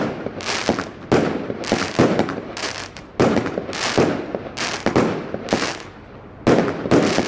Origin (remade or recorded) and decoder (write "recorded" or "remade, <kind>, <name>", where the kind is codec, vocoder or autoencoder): recorded